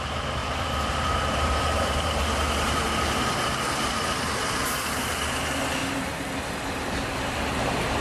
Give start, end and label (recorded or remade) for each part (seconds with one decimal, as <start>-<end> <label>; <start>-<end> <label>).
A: 0.0-0.4 recorded; 0.4-4.3 remade; 4.3-5.8 recorded; 5.8-6.3 remade; 6.3-8.0 recorded